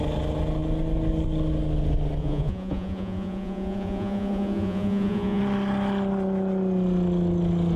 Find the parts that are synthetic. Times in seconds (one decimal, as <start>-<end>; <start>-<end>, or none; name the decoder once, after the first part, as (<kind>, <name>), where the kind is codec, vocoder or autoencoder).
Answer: 2.2-5.4 (vocoder, Vocos)